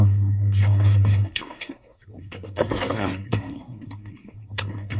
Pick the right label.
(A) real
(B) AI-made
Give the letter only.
B